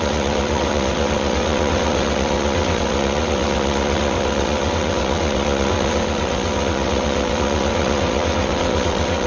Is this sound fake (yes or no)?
yes